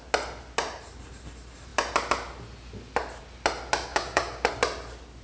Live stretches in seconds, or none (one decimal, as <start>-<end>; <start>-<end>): 0.0-3.9; 4.5-5.2